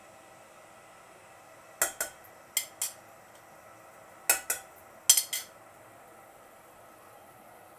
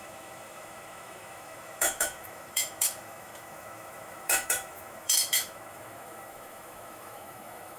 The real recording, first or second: first